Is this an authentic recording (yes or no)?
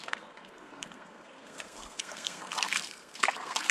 no